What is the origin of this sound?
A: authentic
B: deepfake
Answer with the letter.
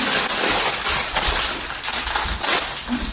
A